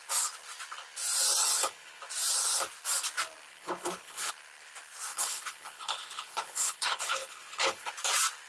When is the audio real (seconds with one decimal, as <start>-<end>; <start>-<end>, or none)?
0.0-1.4; 2.0-3.5; 4.3-5.1; 7.9-8.5